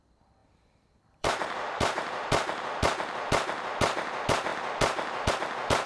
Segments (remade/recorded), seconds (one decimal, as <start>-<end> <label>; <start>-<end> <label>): 0.0-0.4 recorded; 0.4-2.3 remade; 2.3-5.9 recorded